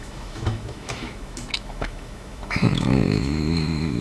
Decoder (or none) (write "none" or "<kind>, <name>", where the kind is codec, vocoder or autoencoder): autoencoder, DAC-VAE